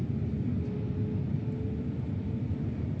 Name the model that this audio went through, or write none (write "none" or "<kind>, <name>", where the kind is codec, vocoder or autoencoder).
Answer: none